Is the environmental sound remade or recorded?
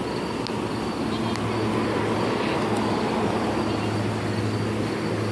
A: recorded